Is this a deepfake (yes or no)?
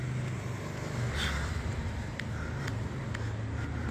no